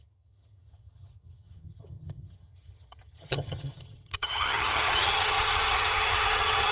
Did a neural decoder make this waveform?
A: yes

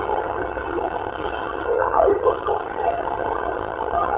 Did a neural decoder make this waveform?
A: yes